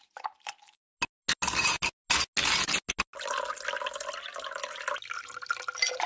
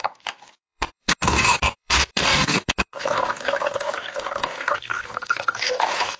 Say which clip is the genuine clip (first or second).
first